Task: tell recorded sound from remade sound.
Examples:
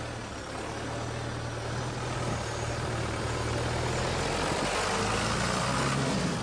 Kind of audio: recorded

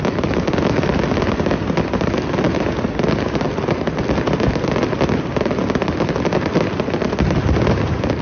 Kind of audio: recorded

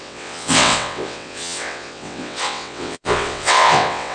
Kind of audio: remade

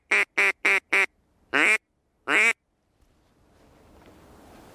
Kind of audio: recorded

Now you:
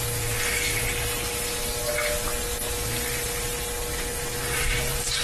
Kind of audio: recorded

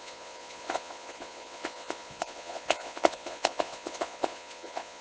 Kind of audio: remade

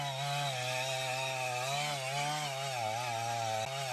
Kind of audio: recorded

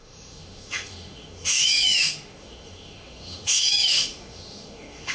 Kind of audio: remade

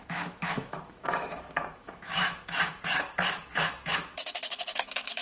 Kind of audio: remade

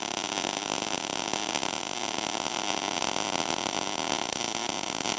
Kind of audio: recorded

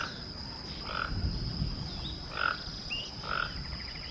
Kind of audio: recorded